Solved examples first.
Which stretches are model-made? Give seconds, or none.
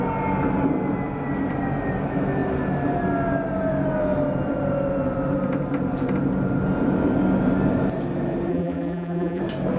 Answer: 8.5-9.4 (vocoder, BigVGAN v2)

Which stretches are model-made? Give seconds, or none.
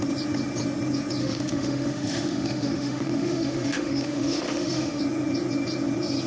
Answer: 1.2-5.0 (autoencoder, DAC-VAE)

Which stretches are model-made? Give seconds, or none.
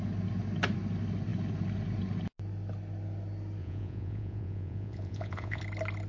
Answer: 3.6-5.6 (vocoder, Vocos)